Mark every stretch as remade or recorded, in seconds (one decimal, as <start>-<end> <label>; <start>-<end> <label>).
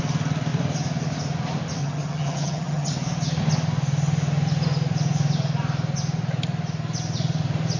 0.0-1.8 recorded; 1.8-2.9 remade; 2.9-7.8 recorded